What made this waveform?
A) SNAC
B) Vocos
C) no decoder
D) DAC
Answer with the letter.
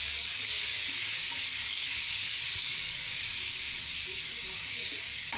D